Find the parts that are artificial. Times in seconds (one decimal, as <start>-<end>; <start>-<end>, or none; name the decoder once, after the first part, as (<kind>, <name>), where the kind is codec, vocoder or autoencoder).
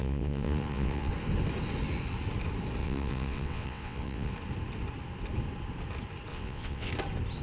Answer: 0.0-1.1 (vocoder, WaveNeXt); 2.8-4.3; 6.3-6.9